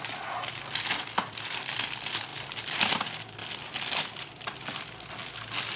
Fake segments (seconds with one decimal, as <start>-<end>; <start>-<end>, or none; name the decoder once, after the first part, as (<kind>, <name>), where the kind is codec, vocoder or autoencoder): none